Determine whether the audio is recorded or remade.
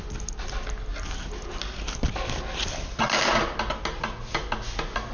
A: recorded